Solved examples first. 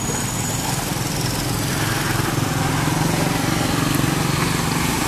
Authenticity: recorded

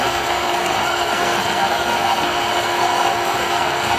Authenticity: remade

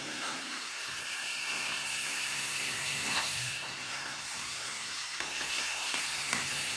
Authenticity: remade